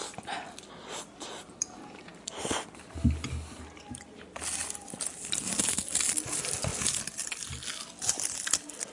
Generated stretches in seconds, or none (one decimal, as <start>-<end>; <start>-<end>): 1.0-8.9